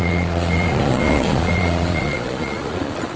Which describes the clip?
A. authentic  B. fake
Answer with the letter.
B